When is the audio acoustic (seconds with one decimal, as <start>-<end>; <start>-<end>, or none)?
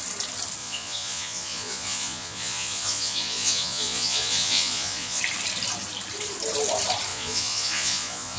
0.0-0.6; 5.2-7.1